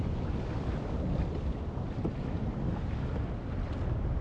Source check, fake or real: real